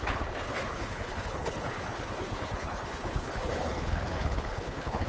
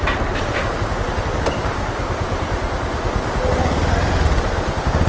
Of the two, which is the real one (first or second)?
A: second